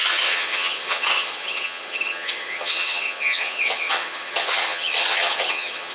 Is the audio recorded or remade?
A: remade